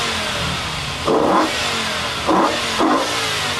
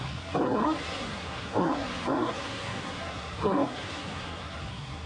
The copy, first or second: second